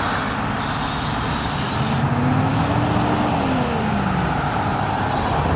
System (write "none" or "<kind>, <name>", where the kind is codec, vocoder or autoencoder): none